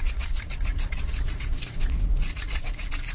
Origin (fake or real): fake